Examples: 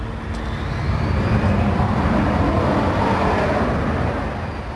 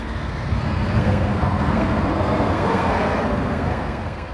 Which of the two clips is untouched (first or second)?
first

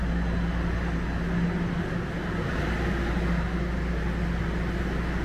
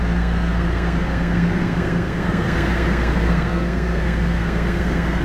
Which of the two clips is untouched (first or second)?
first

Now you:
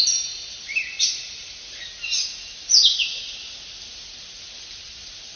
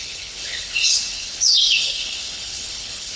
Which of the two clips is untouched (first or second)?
first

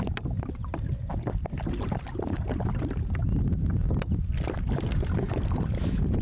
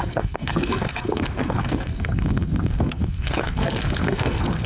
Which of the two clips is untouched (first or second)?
first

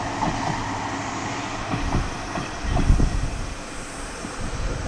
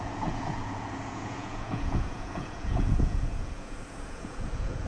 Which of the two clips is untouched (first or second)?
first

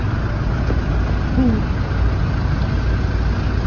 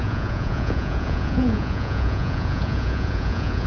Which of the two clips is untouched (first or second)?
first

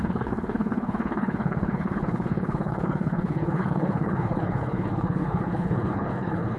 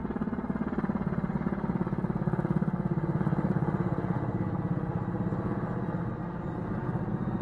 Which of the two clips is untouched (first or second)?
second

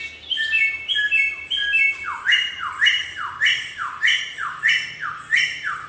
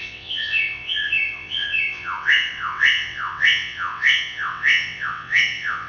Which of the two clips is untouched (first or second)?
first